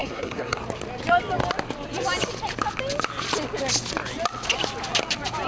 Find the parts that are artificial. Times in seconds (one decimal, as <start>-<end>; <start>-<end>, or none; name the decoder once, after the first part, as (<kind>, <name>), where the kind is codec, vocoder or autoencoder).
0.0-0.6 (codec, SNAC)